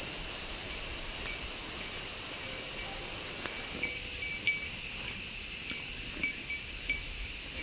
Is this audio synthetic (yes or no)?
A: no